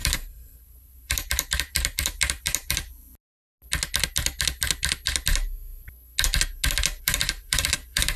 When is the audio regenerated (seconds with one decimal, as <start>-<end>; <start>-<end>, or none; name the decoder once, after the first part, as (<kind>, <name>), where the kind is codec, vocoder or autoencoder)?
0.0-2.9 (vocoder, BigVGAN v2); 7.0-8.2